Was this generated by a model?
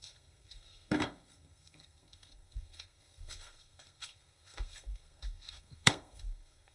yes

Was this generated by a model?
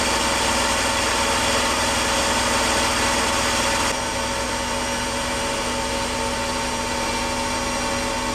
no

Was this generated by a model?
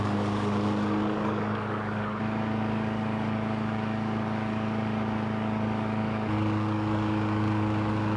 yes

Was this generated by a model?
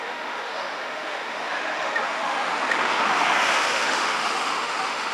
yes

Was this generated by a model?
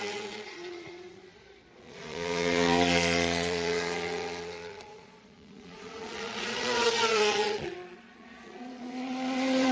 yes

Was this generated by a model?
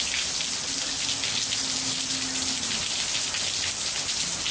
no